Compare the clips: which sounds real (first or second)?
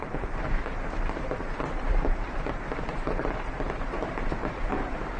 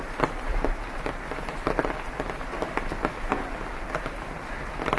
second